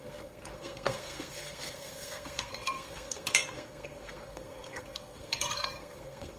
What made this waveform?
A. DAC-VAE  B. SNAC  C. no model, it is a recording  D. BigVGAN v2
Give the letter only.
B